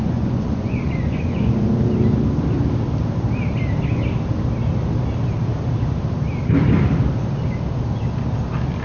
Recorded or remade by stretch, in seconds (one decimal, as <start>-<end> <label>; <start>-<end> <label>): 0.0-1.5 remade; 1.5-8.8 recorded